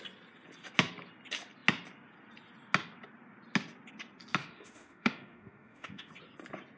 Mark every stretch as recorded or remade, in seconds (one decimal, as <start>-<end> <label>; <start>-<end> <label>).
0.0-4.4 recorded; 4.4-6.1 remade; 6.1-6.8 recorded